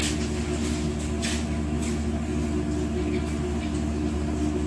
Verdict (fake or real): real